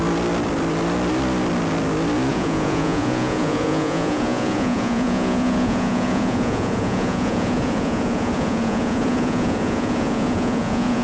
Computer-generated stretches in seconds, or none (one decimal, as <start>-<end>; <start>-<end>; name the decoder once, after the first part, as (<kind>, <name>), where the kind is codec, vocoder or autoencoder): 2.3-11.0 (vocoder, Vocos)